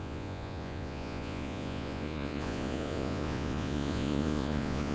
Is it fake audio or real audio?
fake